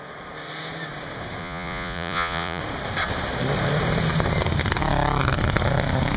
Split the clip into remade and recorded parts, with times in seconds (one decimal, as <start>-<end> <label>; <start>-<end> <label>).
0.0-1.4 recorded; 1.4-2.6 remade; 2.6-6.2 recorded